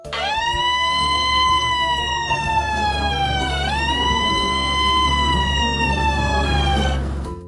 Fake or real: fake